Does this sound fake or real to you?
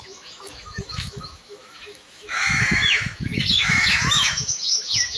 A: fake